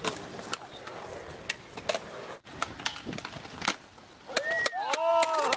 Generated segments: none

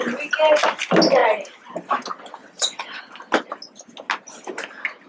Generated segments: 2.4-3.0 (vocoder, WaveNeXt)

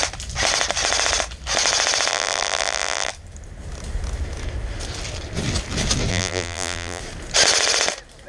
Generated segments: 2.1-3.1 (vocoder, BigVGAN v2); 6.1-7.0

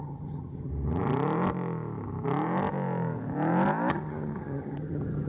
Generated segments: 0.0-0.7 (vocoder, HiFi-GAN); 3.9-5.3

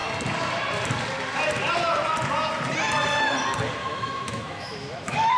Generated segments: 3.8-5.4 (autoencoder, DAC-VAE)

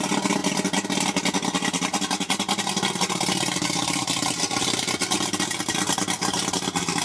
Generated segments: none

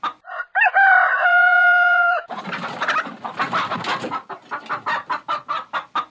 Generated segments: 1.3-2.4 (vocoder, Vocos)